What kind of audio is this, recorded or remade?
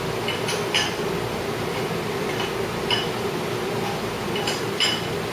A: recorded